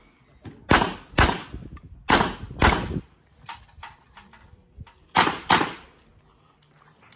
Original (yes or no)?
yes